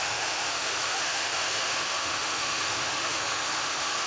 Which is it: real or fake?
fake